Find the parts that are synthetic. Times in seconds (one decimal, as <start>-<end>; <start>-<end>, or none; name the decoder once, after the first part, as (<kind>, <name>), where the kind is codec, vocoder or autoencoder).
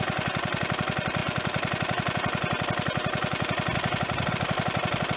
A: none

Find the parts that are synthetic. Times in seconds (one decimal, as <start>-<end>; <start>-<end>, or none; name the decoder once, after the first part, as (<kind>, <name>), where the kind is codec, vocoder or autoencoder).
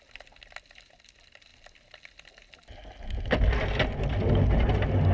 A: none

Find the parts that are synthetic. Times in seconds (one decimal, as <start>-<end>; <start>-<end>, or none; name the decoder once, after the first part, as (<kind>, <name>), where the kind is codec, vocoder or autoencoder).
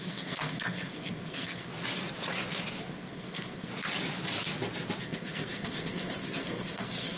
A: 0.0-1.7 (codec, SNAC); 2.8-3.7; 5.0-7.2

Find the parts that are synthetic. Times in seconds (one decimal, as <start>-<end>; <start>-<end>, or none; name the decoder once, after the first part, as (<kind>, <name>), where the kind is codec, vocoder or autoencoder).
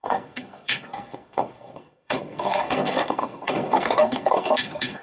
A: 0.0-5.0 (codec, SNAC)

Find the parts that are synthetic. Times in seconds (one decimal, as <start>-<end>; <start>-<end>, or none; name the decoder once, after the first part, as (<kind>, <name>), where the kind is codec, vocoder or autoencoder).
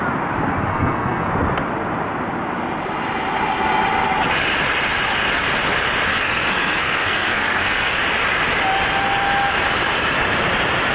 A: 0.7-1.3 (codec, SNAC); 6.1-8.0